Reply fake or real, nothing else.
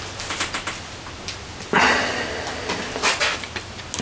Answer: real